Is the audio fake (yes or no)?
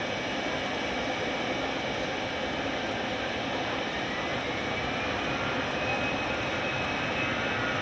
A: no